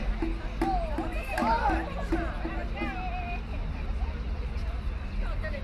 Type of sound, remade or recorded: recorded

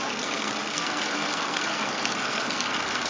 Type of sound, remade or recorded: remade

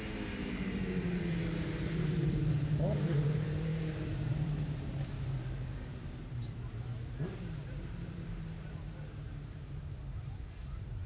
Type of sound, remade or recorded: remade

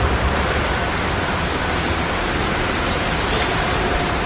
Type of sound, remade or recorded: remade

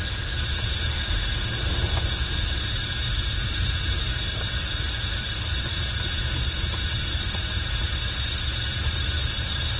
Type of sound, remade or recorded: recorded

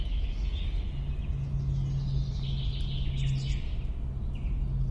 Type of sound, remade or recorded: recorded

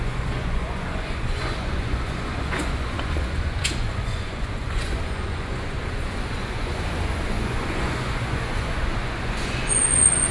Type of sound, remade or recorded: remade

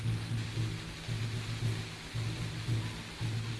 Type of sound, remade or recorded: recorded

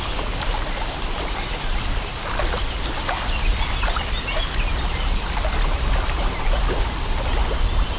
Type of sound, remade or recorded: recorded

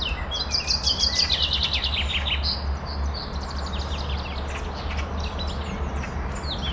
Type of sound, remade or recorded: recorded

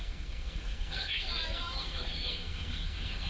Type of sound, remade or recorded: remade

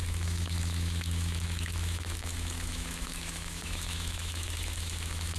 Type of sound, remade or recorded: remade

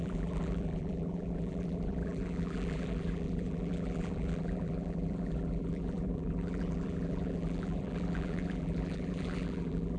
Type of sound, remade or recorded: remade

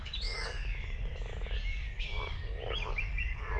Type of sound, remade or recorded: remade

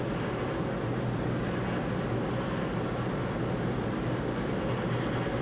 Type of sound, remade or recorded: recorded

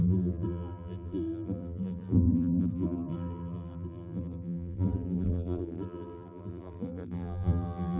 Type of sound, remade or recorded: remade